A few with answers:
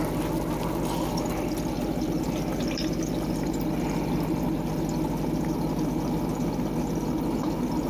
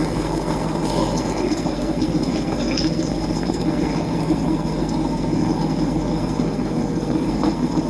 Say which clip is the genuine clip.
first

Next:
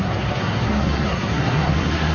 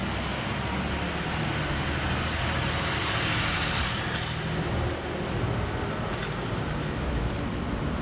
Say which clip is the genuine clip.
second